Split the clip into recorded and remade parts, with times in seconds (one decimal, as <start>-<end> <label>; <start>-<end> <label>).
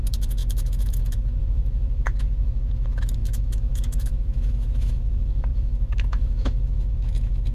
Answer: 0.0-7.5 remade